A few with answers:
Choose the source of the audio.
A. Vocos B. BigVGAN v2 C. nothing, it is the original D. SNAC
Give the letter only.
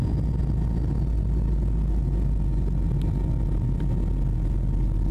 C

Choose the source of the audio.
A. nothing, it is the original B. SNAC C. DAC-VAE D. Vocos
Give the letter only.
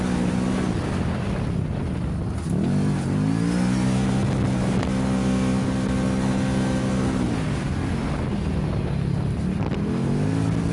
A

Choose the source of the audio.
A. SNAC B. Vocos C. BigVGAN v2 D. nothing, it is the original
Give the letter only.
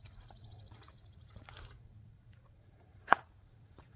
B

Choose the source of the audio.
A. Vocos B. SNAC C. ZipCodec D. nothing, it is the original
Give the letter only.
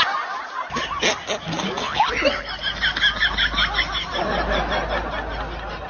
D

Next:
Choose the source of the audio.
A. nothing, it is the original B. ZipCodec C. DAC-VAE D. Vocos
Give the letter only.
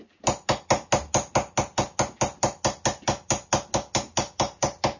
A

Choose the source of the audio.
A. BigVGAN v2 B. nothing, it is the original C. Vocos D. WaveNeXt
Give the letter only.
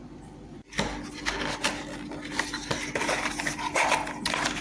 B